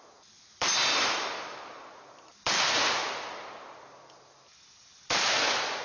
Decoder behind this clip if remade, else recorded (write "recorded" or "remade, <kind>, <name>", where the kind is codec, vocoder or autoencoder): recorded